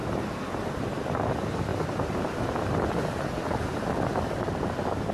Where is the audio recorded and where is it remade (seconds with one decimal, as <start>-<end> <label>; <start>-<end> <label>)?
0.0-5.1 recorded